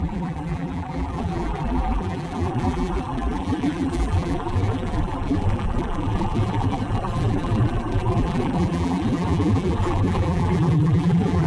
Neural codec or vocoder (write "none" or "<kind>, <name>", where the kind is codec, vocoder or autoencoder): vocoder, BigVGAN v2